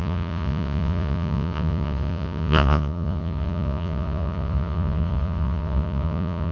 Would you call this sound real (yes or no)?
no